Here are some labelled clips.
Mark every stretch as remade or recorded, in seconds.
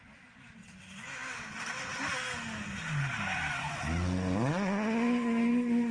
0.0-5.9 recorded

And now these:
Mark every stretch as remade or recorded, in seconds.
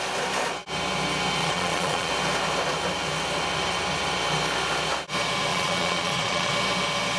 0.0-1.4 recorded; 1.4-2.1 remade; 2.1-5.5 recorded; 5.5-6.5 remade; 6.5-7.2 recorded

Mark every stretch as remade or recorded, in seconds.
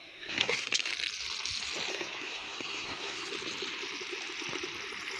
0.0-0.9 remade; 0.9-1.9 recorded; 1.9-3.3 remade; 3.3-5.2 recorded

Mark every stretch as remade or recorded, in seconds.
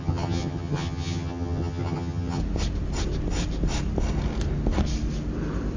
0.0-2.4 remade; 2.4-5.8 recorded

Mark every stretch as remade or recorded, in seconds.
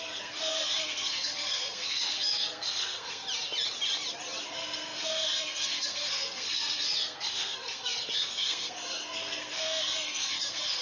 0.0-3.2 remade; 3.2-4.4 recorded; 4.4-10.8 remade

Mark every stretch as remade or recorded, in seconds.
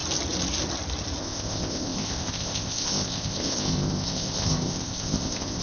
0.0-1.2 recorded; 1.2-5.6 remade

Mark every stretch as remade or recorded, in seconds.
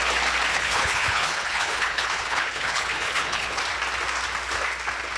0.0-0.5 recorded; 0.5-3.6 remade; 3.6-5.2 recorded